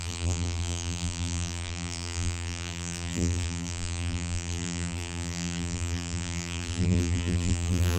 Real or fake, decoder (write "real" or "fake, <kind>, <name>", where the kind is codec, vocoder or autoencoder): fake, vocoder, BigVGAN v2